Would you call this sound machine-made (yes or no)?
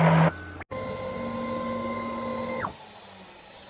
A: no